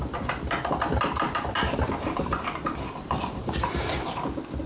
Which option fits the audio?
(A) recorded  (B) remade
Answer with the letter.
A